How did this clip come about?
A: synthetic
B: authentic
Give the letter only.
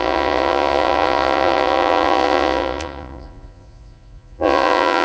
A